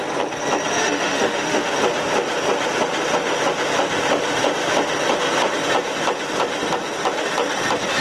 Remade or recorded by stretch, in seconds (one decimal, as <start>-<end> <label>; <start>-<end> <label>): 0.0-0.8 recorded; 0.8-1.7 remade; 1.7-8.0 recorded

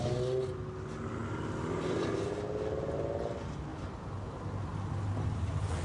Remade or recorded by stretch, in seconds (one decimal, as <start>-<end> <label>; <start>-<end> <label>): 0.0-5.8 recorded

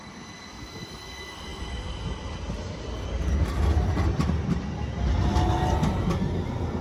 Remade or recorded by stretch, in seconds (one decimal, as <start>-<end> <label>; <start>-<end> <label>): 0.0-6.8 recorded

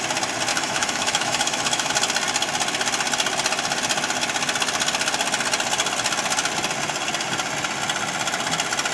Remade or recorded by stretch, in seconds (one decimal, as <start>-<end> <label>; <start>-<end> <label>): 0.0-0.5 recorded; 0.5-1.9 remade; 1.9-8.9 recorded

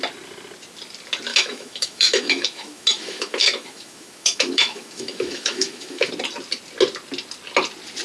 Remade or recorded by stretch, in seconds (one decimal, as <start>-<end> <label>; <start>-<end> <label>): 0.0-1.3 recorded; 1.3-6.1 remade; 6.1-8.0 recorded